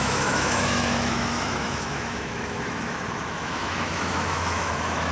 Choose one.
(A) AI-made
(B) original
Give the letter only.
A